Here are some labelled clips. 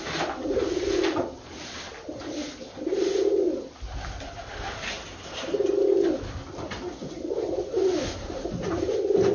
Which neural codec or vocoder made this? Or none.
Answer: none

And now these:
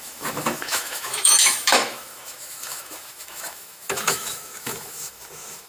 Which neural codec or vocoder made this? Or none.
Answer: autoencoder, DAC-VAE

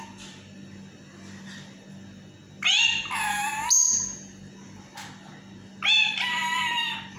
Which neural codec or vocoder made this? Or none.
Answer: none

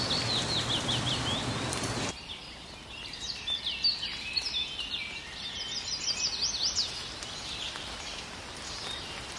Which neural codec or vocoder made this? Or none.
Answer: none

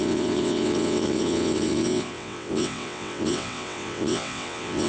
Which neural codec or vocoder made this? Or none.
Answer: vocoder, WaveNeXt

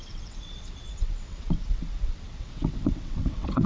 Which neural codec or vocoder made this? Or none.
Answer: vocoder, WaveNeXt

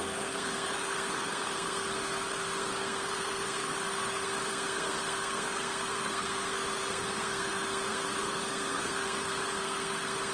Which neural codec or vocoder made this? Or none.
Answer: codec, SNAC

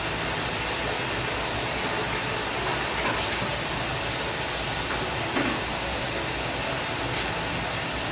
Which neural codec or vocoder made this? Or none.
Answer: none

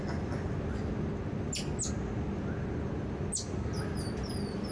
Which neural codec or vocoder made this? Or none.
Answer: none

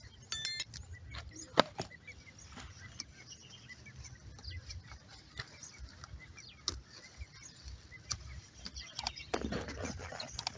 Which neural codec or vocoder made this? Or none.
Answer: none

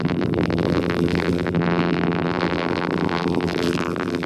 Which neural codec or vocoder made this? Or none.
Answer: vocoder, BigVGAN v2